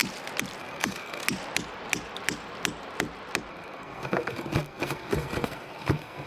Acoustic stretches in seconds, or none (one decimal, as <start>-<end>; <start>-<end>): 0.0-0.6; 1.2-3.5